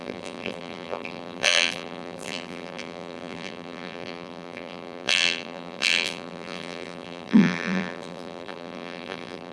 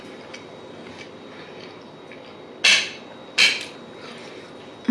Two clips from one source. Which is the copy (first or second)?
first